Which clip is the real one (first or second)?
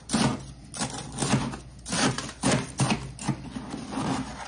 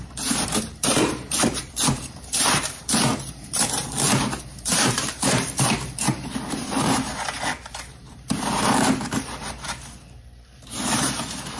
first